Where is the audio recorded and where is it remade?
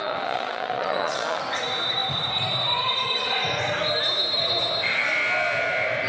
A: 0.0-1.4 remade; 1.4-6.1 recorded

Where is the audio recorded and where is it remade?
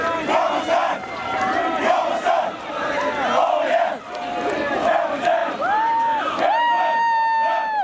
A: 0.0-0.8 recorded; 0.8-2.9 remade; 2.9-7.8 recorded